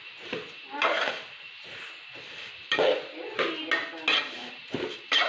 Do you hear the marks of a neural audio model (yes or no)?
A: no